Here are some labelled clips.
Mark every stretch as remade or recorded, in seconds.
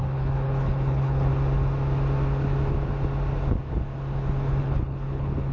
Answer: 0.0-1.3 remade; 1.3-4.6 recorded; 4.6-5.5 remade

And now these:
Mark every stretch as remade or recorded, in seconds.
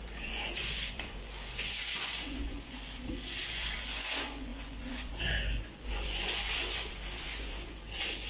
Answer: 0.0-8.3 remade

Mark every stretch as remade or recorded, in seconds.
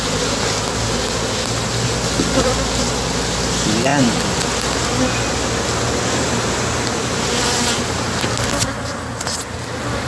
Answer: 0.0-10.1 recorded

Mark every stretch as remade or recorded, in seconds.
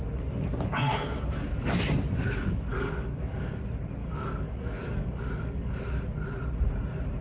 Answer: 0.0-2.7 recorded; 2.7-3.6 remade; 3.6-4.0 recorded; 4.0-5.8 remade; 5.8-7.2 recorded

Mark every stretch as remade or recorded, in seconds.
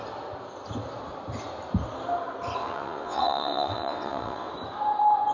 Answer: 0.0-2.6 recorded; 2.6-4.5 remade; 4.5-5.3 recorded